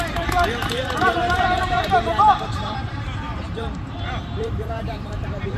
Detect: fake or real fake